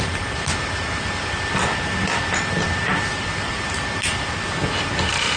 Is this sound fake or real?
real